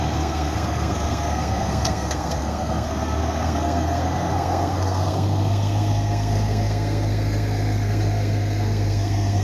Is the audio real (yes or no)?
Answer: no